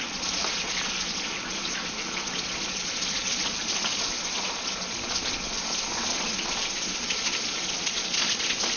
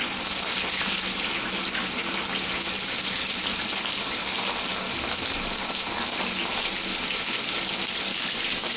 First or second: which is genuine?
second